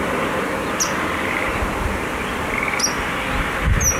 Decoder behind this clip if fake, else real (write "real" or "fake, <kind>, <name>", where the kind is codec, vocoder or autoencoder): real